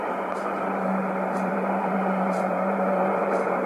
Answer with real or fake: fake